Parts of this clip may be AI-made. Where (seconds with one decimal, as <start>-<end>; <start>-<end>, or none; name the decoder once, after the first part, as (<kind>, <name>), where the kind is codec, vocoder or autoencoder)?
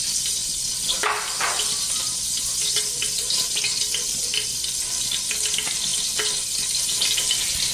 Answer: none